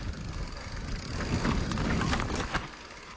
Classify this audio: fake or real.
real